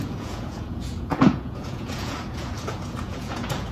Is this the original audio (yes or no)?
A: no